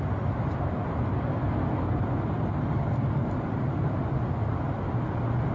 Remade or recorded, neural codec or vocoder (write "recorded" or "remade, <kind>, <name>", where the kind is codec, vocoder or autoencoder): recorded